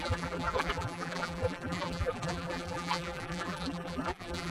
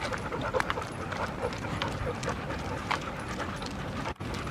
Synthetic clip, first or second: first